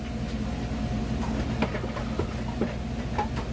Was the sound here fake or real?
real